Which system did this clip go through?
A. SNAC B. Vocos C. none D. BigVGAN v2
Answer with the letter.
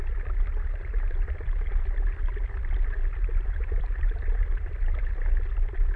D